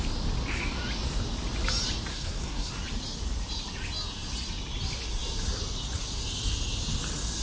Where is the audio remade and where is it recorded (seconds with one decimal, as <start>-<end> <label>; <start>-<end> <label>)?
0.0-2.1 recorded; 2.1-2.7 remade; 2.7-7.4 recorded